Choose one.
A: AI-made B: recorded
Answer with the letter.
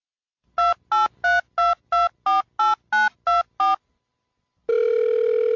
B